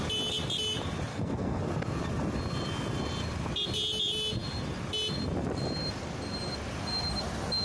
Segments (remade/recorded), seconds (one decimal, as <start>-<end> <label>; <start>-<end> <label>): 0.0-1.1 recorded; 1.1-1.6 remade; 1.6-7.6 recorded